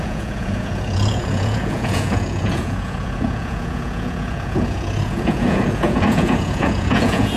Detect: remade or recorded remade